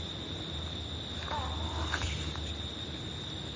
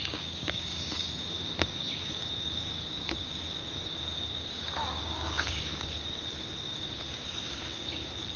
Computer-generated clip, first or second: second